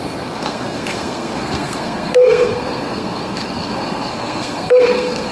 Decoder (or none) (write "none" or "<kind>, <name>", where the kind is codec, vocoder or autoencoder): codec, SNAC